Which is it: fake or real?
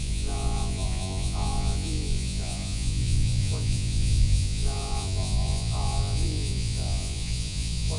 fake